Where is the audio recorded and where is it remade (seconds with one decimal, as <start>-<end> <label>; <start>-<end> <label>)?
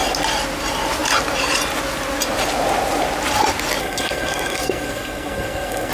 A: 0.0-3.8 recorded; 3.8-5.9 remade